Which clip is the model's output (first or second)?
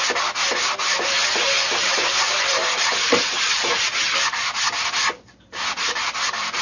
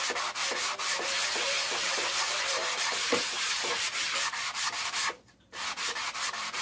second